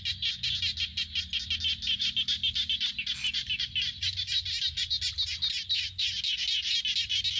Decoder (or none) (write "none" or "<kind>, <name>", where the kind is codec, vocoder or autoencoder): none